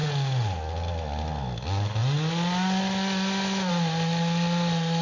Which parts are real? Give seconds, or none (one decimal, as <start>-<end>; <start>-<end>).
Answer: 0.0-5.0